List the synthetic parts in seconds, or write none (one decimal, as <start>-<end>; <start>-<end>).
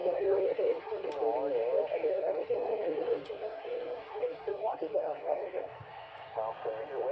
0.0-1.1; 2.1-6.4